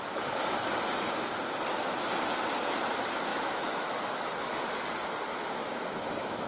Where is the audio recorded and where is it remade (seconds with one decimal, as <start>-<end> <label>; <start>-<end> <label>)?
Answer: 0.0-3.3 recorded; 3.3-4.2 remade; 4.2-5.3 recorded; 5.3-6.5 remade